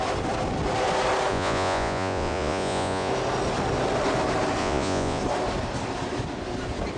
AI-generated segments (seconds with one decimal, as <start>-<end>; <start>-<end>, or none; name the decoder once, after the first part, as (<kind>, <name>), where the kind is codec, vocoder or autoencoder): 1.3-3.1 (vocoder, Vocos); 4.6-5.2